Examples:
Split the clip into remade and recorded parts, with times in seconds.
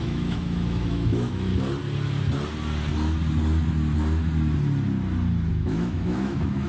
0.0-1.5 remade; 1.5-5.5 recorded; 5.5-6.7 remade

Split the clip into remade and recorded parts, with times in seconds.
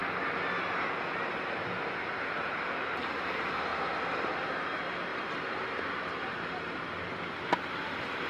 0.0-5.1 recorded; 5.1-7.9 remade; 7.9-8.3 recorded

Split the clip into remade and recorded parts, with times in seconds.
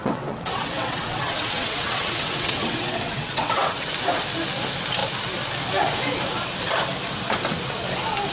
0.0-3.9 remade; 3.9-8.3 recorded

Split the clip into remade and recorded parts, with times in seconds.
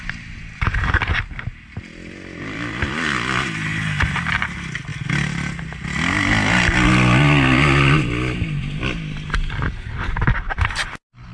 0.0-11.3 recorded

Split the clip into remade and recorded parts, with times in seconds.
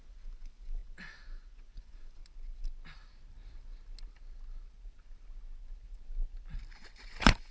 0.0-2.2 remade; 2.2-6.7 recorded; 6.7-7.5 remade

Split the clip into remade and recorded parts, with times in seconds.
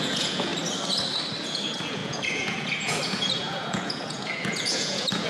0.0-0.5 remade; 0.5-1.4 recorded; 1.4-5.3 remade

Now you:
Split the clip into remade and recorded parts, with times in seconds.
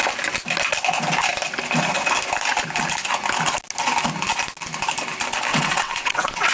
0.0-5.5 recorded; 5.5-6.5 remade